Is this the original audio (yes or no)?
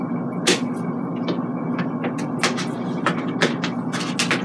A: yes